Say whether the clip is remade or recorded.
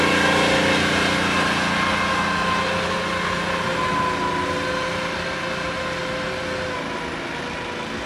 recorded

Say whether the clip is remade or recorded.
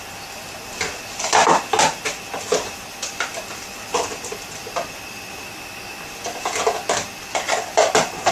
recorded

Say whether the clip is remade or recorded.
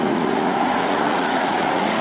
remade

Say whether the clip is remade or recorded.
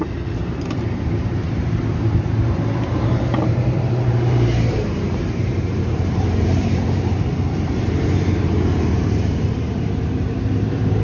remade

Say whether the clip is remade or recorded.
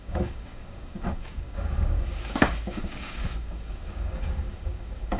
remade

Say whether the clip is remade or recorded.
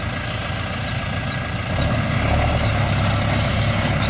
recorded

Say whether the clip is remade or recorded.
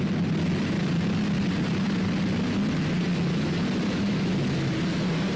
recorded